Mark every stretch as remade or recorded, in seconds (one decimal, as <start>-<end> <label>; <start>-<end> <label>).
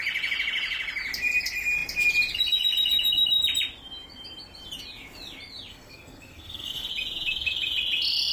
0.0-5.7 recorded; 5.7-6.9 remade; 6.9-8.3 recorded